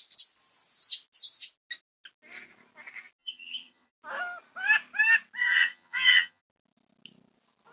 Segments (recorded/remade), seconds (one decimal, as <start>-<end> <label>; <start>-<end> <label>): 0.0-3.2 recorded; 3.2-3.9 remade; 3.9-5.4 recorded; 5.4-6.4 remade; 6.4-7.7 recorded